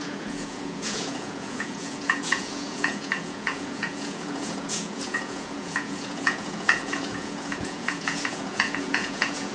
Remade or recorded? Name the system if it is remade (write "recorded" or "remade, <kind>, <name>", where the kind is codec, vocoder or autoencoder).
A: remade, vocoder, Vocos